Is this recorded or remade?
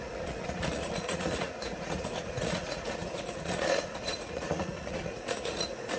remade